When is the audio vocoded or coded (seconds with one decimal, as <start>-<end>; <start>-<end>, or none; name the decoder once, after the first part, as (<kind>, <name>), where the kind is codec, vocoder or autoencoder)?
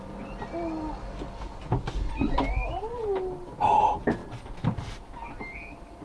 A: none